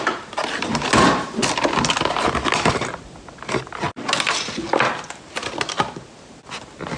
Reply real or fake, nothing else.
real